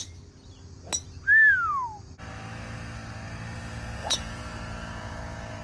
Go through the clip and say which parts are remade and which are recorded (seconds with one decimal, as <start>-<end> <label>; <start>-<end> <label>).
0.0-4.0 recorded; 4.0-5.6 remade